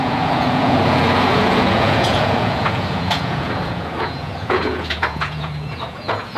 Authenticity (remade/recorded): remade